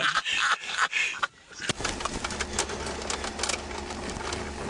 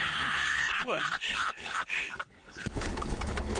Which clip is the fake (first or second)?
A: second